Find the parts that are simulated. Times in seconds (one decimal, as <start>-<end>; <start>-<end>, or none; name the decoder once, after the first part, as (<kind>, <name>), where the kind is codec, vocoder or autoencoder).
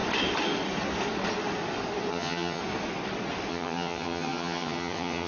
2.1-2.6 (vocoder, HiFi-GAN); 3.5-5.3